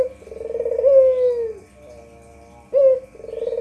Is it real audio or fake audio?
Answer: real